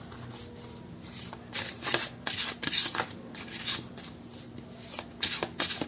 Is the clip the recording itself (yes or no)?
yes